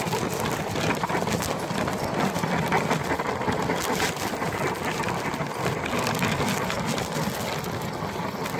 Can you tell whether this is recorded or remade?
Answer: recorded